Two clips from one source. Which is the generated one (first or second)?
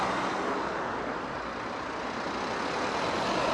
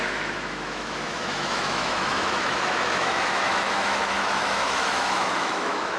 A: second